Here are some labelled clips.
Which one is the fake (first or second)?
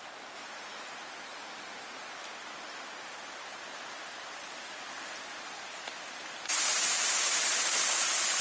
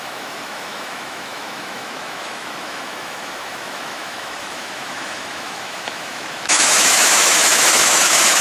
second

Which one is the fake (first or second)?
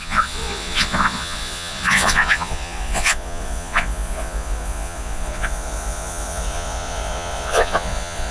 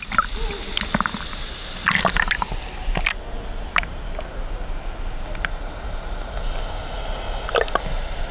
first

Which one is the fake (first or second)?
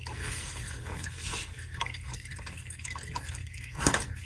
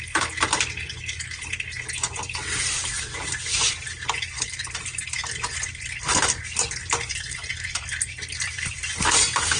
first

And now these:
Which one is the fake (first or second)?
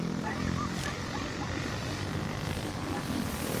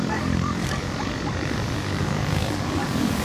second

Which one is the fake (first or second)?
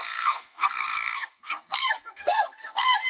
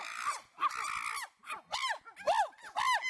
first